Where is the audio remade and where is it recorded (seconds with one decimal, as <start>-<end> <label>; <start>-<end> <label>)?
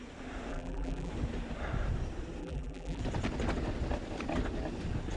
0.0-0.5 recorded; 0.5-1.1 remade; 1.1-2.4 recorded; 2.4-3.0 remade; 3.0-5.2 recorded